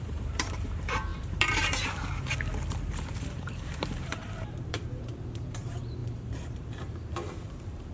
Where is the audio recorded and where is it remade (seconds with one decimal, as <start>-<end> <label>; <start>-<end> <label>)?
0.0-7.9 remade